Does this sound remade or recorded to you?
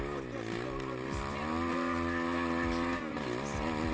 recorded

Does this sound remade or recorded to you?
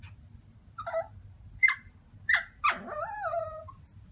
recorded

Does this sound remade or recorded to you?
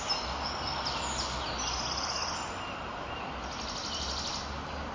recorded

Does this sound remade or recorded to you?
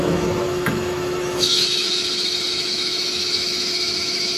remade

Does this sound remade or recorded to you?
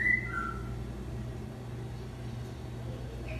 recorded